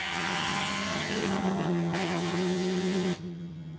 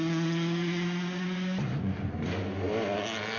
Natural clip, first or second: second